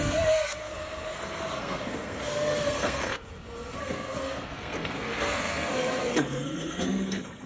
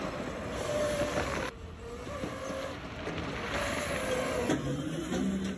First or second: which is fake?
first